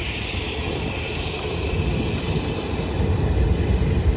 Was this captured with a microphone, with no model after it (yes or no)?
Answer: no